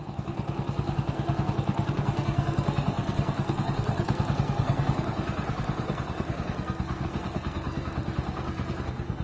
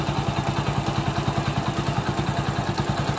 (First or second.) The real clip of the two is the second